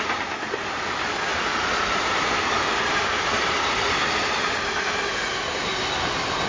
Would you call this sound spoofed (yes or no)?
no